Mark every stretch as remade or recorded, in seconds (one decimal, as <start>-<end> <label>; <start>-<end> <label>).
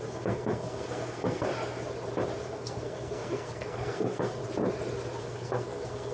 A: 0.0-1.5 remade; 1.5-2.4 recorded; 2.4-4.4 remade; 4.4-5.2 recorded; 5.2-6.1 remade